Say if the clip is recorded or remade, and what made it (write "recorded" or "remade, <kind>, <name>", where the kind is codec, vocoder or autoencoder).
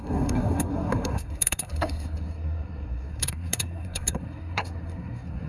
remade, codec, SNAC